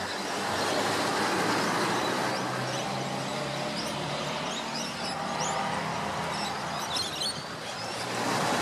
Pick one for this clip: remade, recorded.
recorded